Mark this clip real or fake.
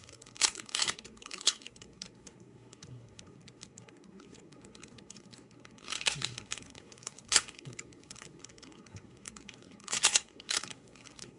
fake